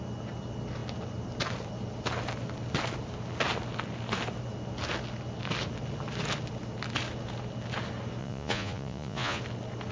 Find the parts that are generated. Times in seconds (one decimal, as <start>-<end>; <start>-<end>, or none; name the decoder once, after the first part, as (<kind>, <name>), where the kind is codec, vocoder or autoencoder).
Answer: 8.2-9.4 (vocoder, Vocos)